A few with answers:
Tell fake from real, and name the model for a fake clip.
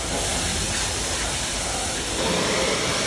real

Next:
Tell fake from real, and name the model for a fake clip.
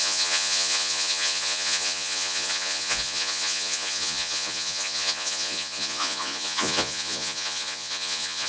fake, vocoder, Vocos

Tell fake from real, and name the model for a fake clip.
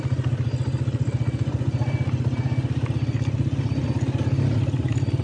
real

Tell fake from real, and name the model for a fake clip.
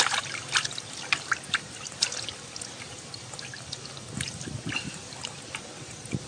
real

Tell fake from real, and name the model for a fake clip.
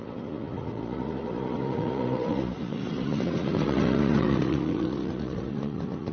fake, vocoder, Vocos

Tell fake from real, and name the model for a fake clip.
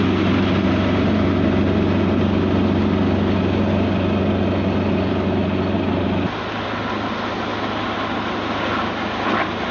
real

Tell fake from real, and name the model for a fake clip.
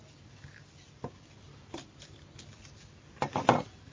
real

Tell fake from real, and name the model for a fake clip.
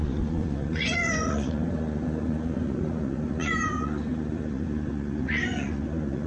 fake, vocoder, Vocos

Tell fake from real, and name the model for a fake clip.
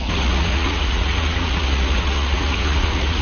fake, vocoder, Vocos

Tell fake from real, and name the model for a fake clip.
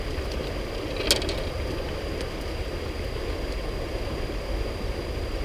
real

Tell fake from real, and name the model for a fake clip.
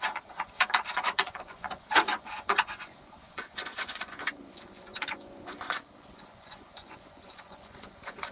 fake, vocoder, Vocos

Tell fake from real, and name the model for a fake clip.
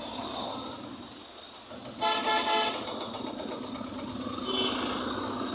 real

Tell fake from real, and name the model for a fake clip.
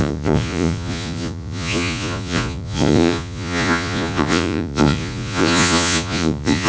fake, vocoder, Vocos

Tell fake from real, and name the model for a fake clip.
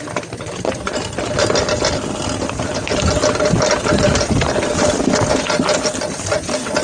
real